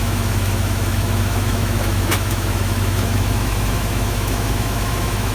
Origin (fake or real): fake